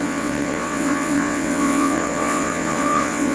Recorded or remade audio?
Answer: remade